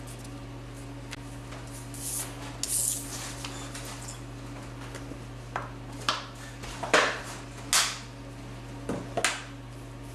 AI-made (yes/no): no